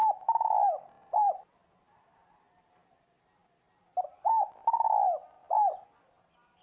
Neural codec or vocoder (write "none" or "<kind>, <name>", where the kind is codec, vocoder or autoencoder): none